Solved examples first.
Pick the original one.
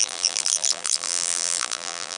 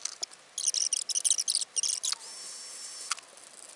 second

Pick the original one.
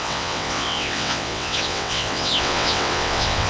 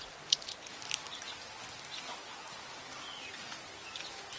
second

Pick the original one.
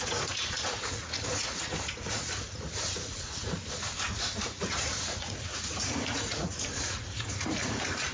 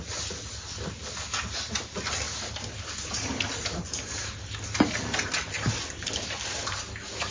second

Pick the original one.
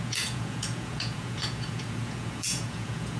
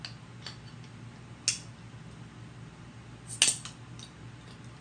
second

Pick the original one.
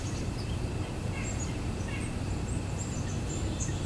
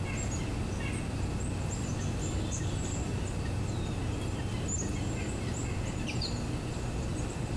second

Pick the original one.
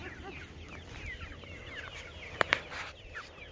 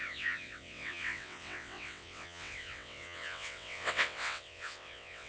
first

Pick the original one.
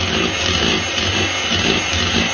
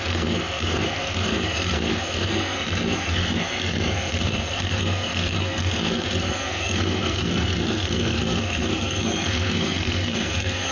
first